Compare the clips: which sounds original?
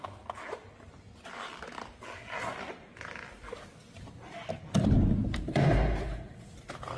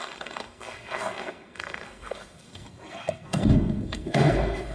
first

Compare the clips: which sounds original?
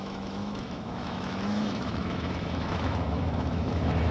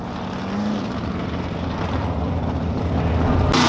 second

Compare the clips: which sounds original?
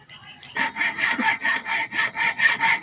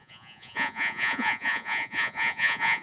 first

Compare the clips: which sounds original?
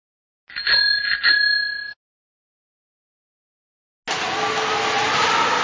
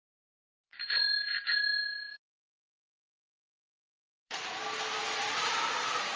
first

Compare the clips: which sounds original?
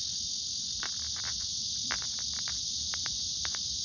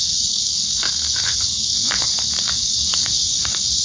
first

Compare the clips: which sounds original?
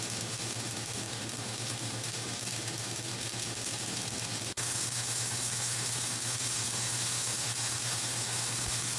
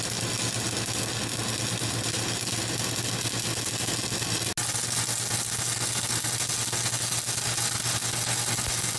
second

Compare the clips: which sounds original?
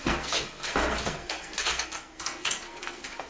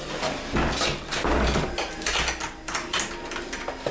second